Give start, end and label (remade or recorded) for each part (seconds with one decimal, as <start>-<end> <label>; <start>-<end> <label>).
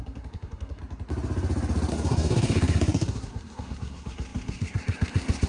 0.0-0.8 remade; 0.8-1.9 recorded; 1.9-5.5 remade